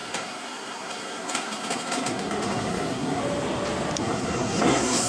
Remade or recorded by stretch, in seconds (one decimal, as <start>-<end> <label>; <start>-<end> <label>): 0.0-3.2 remade; 3.2-4.0 recorded; 4.0-5.1 remade